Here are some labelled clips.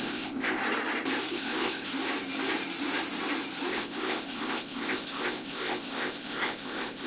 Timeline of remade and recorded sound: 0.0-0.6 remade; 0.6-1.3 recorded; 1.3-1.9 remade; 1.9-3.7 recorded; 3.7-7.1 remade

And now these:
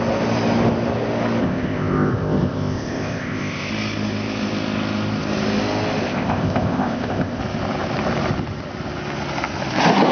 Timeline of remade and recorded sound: 0.0-1.4 recorded; 1.4-3.7 remade; 3.7-6.0 recorded; 6.0-7.4 remade; 7.4-10.1 recorded

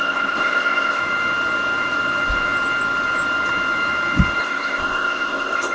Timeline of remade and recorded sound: 0.0-1.0 remade; 1.0-4.4 recorded; 4.4-5.7 remade

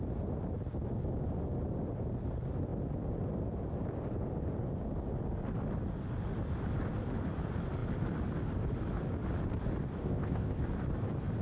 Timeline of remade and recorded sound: 0.0-10.0 recorded; 10.0-10.6 remade; 10.6-11.4 recorded

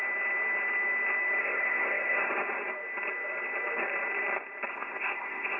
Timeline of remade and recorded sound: 0.0-1.4 recorded; 1.4-2.3 remade; 2.3-4.7 recorded; 4.7-5.6 remade

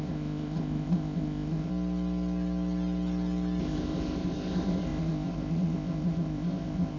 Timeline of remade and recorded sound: 0.0-1.7 remade; 1.7-3.6 recorded; 3.6-7.0 remade